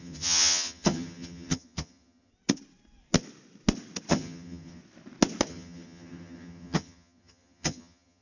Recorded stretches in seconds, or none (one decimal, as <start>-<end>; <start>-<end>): 2.3-4.1; 4.8-5.5

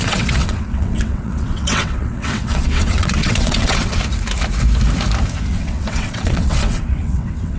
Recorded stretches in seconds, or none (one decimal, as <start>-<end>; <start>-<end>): 4.0-5.5

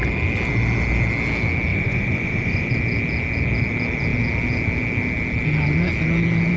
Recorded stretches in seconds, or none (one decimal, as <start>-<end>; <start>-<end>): 0.0-1.7; 2.7-6.6

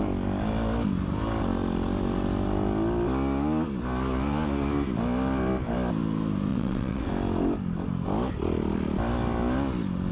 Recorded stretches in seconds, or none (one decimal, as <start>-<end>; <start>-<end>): 0.0-6.5; 7.1-10.1